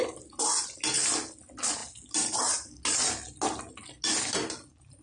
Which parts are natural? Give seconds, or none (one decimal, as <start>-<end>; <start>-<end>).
0.0-5.0

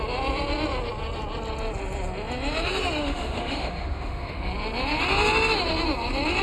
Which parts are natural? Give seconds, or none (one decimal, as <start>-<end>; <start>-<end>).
0.0-3.0; 4.5-6.4